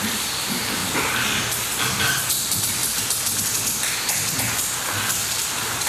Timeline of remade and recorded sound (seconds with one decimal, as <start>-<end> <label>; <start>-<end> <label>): 0.0-0.8 remade; 0.8-2.2 recorded; 2.2-2.8 remade; 2.8-5.2 recorded; 5.2-5.9 remade